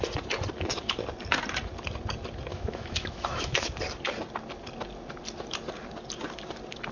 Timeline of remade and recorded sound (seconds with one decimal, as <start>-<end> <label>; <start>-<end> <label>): 0.0-2.5 recorded; 2.5-3.7 remade; 3.7-6.9 recorded